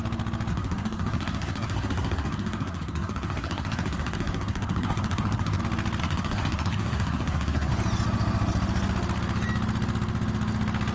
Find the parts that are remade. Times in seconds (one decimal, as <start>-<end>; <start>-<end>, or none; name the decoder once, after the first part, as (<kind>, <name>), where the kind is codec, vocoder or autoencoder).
0.5-5.6 (codec, SNAC); 6.0-7.7